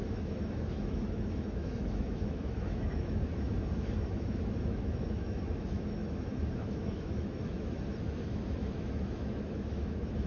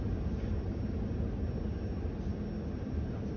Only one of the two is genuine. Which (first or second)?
second